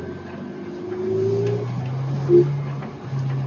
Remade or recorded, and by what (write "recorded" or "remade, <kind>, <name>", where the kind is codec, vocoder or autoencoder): recorded